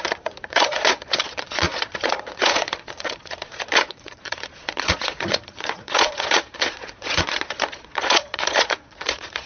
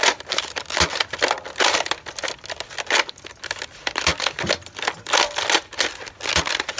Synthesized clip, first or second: first